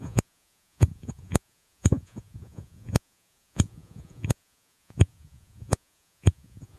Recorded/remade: remade